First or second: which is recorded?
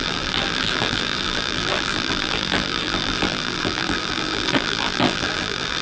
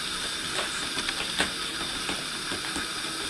second